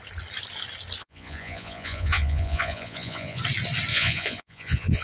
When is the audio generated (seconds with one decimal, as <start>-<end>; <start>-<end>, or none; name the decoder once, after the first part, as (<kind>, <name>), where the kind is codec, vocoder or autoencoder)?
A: 1.0-3.4 (vocoder, Vocos); 3.9-5.0